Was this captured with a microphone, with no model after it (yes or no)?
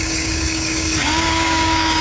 no